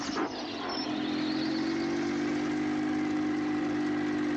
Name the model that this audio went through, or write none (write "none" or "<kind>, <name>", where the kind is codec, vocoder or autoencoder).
none